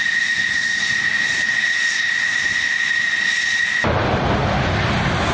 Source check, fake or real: real